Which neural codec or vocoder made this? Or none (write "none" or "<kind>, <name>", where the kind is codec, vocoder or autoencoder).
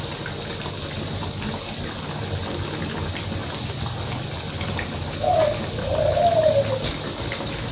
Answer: none